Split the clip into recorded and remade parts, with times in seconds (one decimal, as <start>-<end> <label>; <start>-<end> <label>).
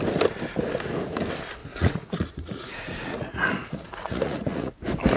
0.0-1.6 recorded; 1.6-4.7 remade; 4.7-5.2 recorded